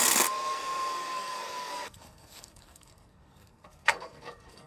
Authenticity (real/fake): fake